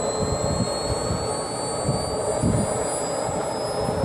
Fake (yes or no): no